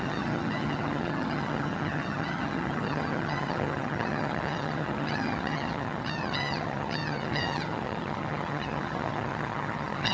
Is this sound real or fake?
fake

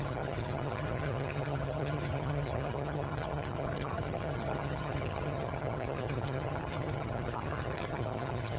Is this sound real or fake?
fake